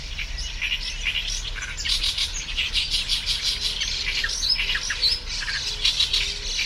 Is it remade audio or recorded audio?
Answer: recorded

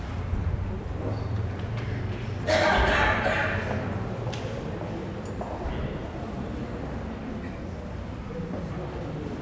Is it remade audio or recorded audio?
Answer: recorded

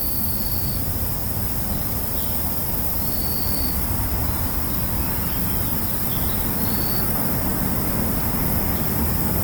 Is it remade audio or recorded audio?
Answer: recorded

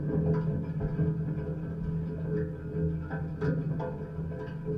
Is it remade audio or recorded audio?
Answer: recorded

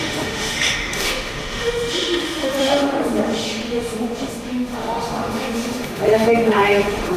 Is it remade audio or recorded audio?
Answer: remade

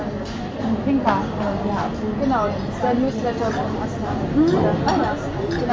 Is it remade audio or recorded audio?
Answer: recorded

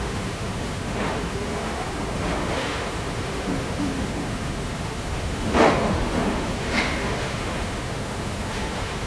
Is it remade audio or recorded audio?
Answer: remade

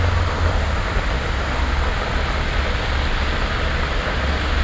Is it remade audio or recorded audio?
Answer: recorded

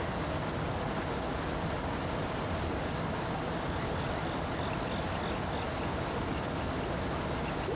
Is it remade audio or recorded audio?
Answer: recorded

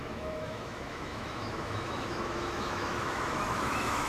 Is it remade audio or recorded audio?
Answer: remade